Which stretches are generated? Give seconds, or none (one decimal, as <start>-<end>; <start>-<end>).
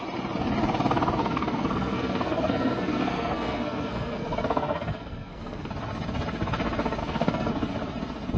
1.2-5.7; 7.0-7.5